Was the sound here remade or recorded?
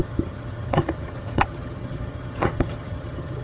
remade